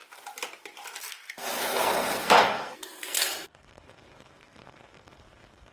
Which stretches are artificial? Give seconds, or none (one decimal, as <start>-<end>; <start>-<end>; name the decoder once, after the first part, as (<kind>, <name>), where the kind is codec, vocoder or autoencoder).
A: 1.0-5.7 (codec, SNAC)